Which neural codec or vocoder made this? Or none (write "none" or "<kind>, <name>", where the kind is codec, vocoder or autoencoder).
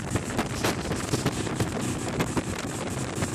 vocoder, BigVGAN v2